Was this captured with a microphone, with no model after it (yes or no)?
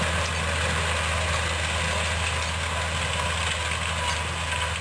yes